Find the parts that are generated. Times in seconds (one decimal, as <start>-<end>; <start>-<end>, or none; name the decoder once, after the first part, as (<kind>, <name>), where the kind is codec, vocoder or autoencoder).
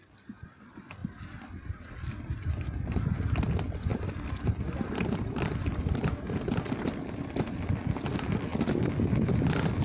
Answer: none